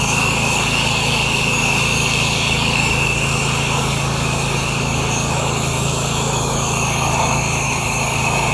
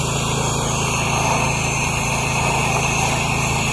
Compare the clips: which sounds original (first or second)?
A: second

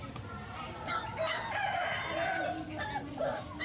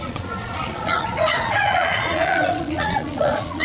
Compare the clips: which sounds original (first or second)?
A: first